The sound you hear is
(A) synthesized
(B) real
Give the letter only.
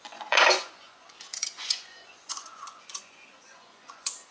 A